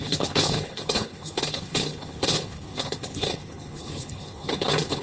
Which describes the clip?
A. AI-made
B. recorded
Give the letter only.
A